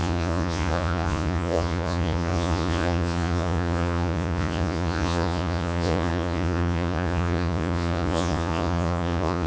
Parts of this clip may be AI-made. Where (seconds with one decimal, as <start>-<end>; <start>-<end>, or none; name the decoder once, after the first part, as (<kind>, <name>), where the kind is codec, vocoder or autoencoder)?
0.0-9.5 (vocoder, Vocos)